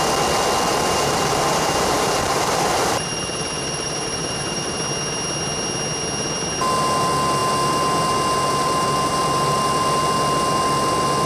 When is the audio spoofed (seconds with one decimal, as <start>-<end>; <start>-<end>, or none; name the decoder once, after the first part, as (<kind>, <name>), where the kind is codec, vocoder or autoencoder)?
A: 0.7-4.8 (vocoder, BigVGAN v2)